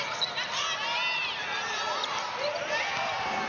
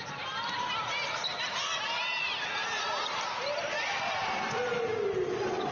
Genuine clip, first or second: first